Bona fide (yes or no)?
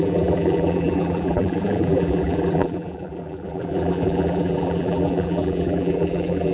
no